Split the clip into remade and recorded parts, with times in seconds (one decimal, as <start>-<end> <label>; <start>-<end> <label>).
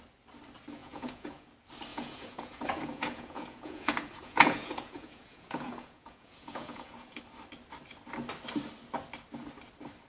0.0-0.8 recorded; 0.8-1.5 remade; 1.5-1.9 recorded; 1.9-7.2 remade; 7.2-10.1 recorded